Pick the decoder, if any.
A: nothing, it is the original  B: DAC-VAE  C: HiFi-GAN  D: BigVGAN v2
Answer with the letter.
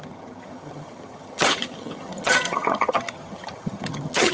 C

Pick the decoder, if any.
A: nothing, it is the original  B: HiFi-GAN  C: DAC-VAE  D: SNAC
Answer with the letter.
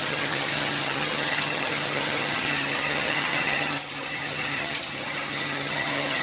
B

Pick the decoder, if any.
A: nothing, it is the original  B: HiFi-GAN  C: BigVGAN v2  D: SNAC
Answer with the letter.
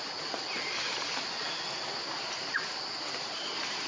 A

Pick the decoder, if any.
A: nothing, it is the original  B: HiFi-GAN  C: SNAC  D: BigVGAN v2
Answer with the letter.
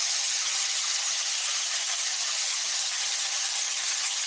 B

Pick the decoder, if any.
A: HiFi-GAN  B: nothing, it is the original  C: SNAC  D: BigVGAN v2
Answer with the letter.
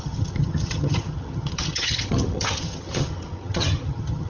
A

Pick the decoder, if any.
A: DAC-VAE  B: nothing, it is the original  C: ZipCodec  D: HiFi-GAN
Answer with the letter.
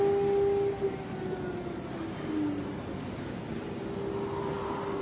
B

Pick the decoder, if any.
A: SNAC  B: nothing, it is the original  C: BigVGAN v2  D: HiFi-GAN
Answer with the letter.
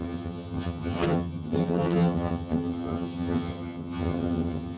D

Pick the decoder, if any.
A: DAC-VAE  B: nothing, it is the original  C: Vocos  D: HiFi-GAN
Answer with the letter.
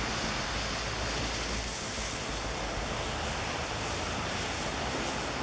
B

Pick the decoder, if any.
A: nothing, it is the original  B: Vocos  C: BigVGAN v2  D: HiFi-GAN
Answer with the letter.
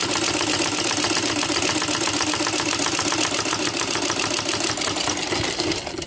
A